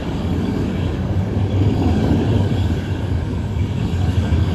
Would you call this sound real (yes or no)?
no